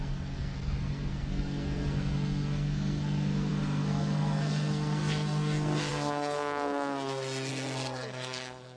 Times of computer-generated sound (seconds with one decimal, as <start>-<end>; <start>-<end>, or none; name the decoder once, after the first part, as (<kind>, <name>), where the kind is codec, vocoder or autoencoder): 0.0-8.8 (codec, SNAC)